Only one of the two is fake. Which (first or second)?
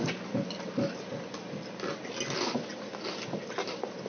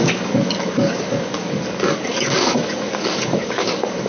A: second